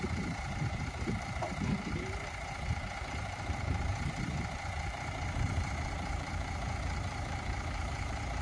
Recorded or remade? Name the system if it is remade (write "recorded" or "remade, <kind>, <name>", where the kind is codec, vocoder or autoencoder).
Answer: remade, vocoder, BigVGAN v2